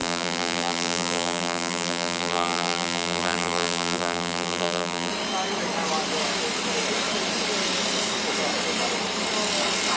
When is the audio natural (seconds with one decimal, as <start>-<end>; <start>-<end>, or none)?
5.1-10.0